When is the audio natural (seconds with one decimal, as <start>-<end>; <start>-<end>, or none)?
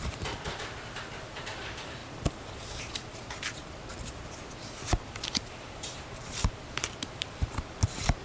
2.0-2.5; 3.9-5.5